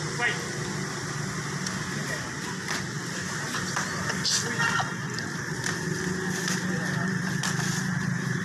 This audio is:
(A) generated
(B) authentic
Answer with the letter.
B